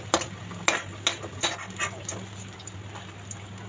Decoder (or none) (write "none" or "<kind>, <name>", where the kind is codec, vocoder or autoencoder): none